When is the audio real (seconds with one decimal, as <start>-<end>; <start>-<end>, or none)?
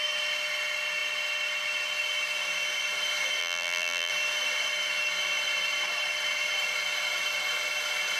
0.0-3.4; 4.1-8.2